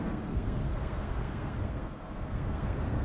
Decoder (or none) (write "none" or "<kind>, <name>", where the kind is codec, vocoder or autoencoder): codec, SNAC